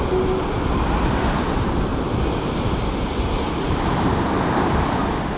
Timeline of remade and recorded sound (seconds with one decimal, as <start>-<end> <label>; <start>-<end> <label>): 0.0-1.9 recorded; 1.9-5.4 remade